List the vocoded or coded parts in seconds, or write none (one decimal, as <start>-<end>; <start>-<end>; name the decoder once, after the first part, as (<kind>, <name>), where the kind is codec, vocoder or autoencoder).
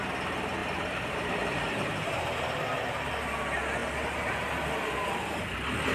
0.6-2.2 (vocoder, BigVGAN v2)